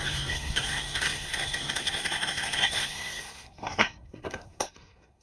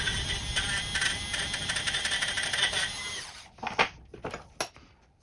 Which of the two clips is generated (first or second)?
first